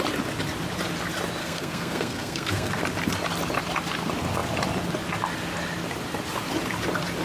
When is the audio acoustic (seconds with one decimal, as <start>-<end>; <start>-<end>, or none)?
0.0-1.4; 2.8-7.2